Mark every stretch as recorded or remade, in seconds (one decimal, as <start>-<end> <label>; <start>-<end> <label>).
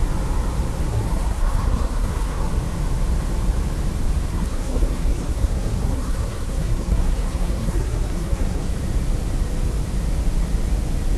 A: 0.0-0.9 recorded; 0.9-2.4 remade; 2.4-4.3 recorded; 4.3-8.7 remade; 8.7-11.2 recorded